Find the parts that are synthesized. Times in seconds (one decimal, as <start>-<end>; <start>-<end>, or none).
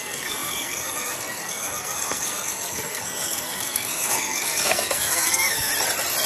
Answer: 0.0-5.7